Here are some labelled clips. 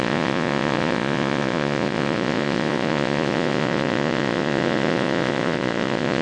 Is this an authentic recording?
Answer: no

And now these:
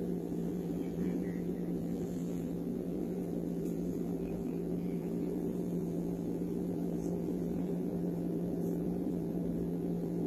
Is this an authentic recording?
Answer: no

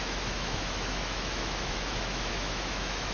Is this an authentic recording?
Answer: no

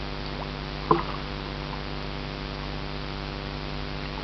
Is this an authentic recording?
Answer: yes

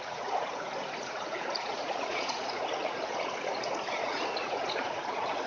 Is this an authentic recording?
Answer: no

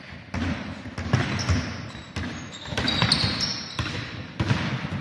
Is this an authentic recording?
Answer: yes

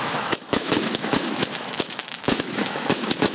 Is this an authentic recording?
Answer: no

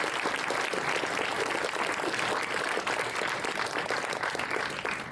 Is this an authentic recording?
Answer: yes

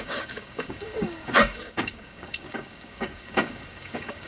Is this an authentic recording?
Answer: no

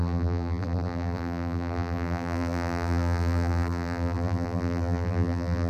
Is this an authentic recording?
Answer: no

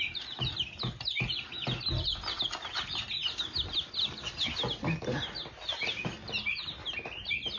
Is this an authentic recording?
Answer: yes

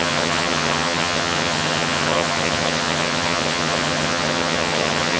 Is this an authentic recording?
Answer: no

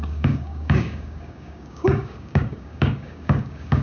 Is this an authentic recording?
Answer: no